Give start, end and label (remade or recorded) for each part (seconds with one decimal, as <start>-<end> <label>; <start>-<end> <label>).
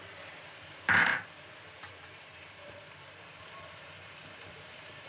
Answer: 0.0-5.1 remade